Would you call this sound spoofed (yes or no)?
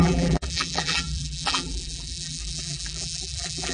yes